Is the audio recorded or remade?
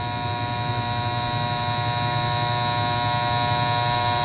recorded